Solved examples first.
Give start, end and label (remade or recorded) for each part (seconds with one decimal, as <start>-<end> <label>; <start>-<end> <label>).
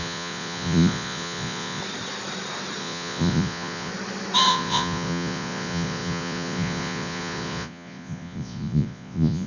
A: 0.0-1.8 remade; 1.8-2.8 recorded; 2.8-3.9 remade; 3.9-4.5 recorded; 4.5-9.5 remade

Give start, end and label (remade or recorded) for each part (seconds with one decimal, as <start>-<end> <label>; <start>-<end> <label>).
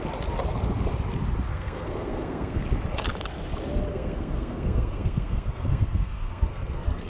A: 0.0-1.5 recorded; 1.5-2.6 remade; 2.6-3.9 recorded; 3.9-7.1 remade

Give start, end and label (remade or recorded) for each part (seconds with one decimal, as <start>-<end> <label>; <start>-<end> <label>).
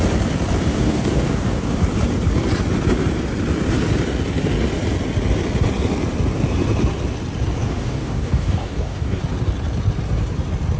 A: 0.0-0.7 recorded; 0.7-1.8 remade; 1.8-7.6 recorded; 7.6-9.2 remade; 9.2-10.8 recorded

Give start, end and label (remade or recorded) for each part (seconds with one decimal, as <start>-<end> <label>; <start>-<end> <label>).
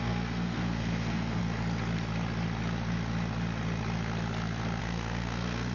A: 0.0-1.4 remade; 1.4-4.8 recorded; 4.8-5.7 remade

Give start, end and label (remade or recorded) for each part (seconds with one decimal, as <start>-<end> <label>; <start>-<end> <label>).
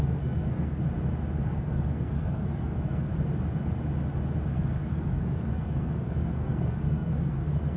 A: 0.0-0.8 remade; 0.8-1.4 recorded; 1.4-3.1 remade; 3.1-4.5 recorded; 4.5-7.8 remade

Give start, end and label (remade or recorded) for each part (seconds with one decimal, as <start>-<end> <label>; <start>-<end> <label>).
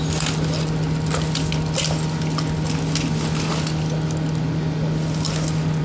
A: 0.0-5.8 recorded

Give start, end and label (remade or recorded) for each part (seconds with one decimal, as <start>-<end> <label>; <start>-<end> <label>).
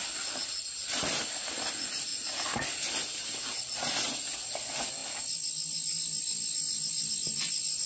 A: 0.0-7.9 recorded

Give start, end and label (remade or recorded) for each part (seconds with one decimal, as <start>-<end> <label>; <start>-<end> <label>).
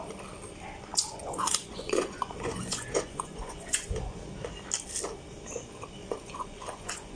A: 0.0-0.9 recorded; 0.9-4.2 remade; 4.2-6.0 recorded; 6.0-7.2 remade